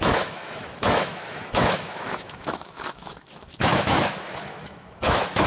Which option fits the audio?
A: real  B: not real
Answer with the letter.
B